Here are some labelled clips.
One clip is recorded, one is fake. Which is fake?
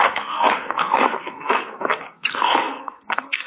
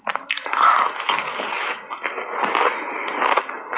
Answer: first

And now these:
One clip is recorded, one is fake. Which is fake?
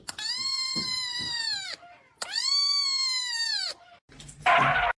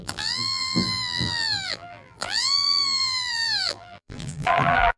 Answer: second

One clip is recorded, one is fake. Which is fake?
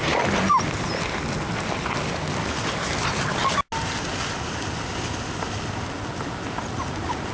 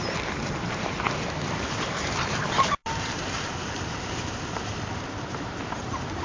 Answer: second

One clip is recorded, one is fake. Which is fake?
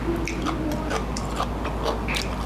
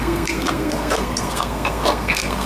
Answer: second